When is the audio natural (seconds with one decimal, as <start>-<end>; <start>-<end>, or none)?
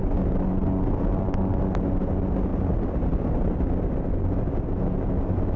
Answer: 0.0-5.6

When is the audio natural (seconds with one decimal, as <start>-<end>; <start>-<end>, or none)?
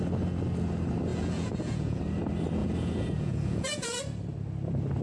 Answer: 0.0-1.1; 2.0-2.6; 4.0-5.0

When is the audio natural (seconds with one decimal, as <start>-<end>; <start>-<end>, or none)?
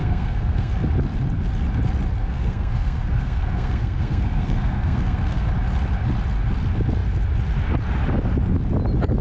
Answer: 0.7-2.2; 5.5-9.2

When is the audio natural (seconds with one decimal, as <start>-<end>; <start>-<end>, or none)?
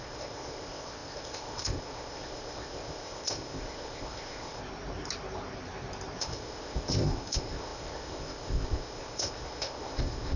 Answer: 4.6-6.2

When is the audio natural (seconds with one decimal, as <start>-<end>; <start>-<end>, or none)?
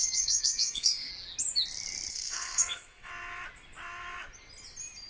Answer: 1.1-2.1; 3.1-5.1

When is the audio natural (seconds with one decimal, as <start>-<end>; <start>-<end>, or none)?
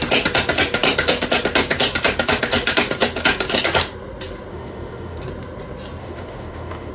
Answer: 0.0-4.5; 5.2-6.0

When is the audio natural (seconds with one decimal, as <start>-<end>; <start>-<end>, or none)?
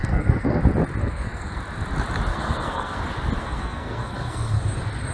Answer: 0.6-1.0; 1.6-2.3; 3.0-3.4; 4.6-5.1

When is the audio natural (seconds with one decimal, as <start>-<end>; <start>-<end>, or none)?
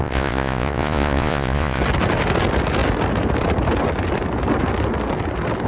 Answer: 1.8-5.7